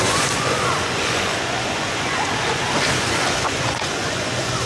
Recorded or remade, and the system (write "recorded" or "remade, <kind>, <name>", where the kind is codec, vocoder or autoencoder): remade, vocoder, Vocos